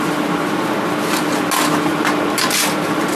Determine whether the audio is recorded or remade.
recorded